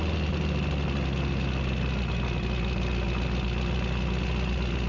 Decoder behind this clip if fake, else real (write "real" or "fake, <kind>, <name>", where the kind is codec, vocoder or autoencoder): real